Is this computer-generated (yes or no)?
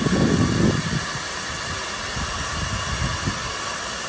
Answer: no